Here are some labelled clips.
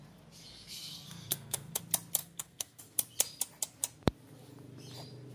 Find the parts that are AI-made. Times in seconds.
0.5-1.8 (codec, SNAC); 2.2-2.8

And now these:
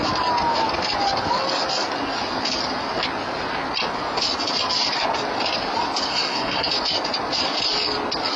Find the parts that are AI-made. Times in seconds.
6.1-6.7 (codec, SNAC)